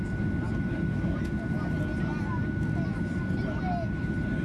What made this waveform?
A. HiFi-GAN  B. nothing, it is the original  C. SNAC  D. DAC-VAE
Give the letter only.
B